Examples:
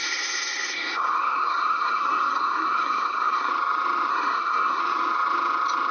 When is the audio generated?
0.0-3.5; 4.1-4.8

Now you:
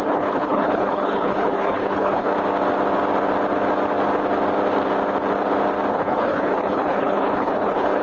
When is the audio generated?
0.0-2.3; 5.9-8.0

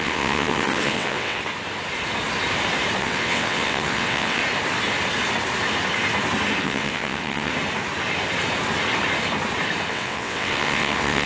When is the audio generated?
0.0-1.4; 3.0-4.4; 6.6-7.5; 9.9-11.3

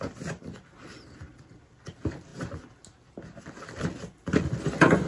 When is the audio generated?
0.0-2.3; 3.4-5.1

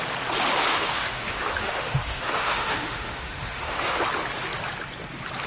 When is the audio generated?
0.7-4.0

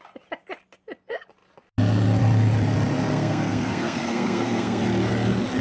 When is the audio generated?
3.1-4.8

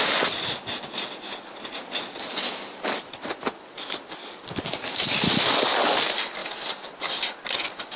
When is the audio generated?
none

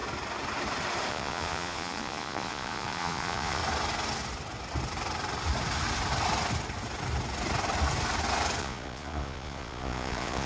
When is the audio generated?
1.1-3.6; 8.6-10.5